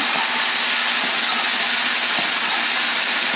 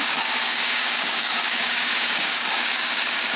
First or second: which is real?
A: first